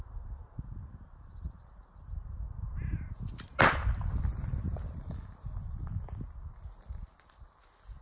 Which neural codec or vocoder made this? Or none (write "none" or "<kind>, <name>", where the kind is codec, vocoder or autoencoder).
none